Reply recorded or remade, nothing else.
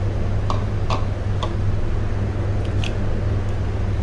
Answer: recorded